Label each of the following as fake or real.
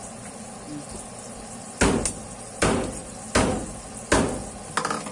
real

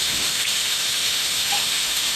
fake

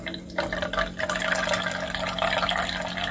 real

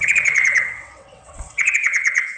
fake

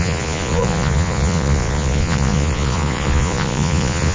fake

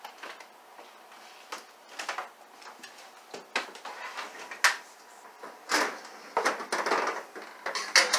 real